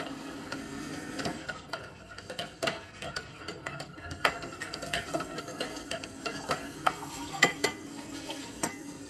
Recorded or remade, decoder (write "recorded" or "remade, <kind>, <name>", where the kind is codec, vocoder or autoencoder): remade, codec, SNAC